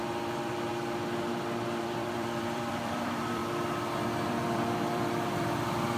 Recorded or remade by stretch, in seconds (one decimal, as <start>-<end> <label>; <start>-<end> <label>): 0.0-0.7 remade; 0.7-1.8 recorded; 1.8-3.4 remade; 3.4-4.2 recorded; 4.2-6.0 remade